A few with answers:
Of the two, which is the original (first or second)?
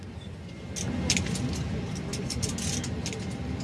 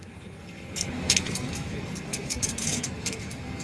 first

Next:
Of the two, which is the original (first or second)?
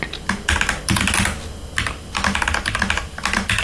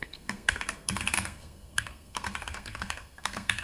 first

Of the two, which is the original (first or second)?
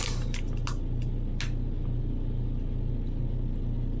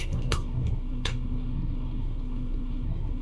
first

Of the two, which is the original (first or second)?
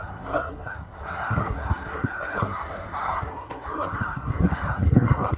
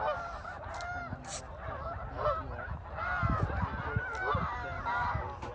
second